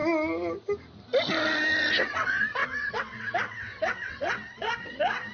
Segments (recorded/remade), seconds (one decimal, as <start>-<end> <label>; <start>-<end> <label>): 0.0-1.9 recorded; 1.9-5.3 remade

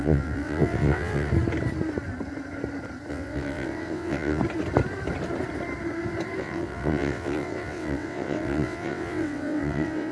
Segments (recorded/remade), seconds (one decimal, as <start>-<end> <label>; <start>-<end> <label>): 0.0-1.3 remade; 1.3-3.1 recorded; 3.1-4.4 remade; 4.4-6.4 recorded; 6.4-10.1 remade

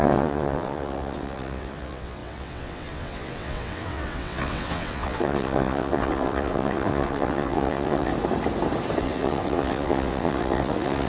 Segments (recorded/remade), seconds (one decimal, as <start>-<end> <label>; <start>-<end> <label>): 0.0-8.1 remade; 8.1-9.0 recorded; 9.0-11.1 remade

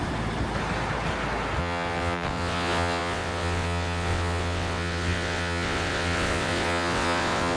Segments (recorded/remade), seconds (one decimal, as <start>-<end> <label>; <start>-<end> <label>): 0.0-1.6 recorded; 1.6-7.6 remade

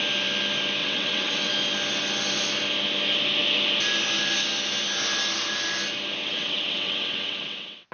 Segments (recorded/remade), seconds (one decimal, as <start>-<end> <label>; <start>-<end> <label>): 0.0-0.8 recorded; 0.8-1.5 remade; 1.5-6.2 recorded; 6.2-7.9 remade